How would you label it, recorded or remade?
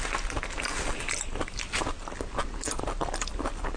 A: recorded